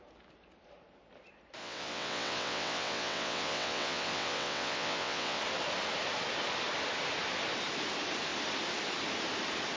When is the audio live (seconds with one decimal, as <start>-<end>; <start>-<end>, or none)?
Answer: 0.0-1.6; 5.4-9.8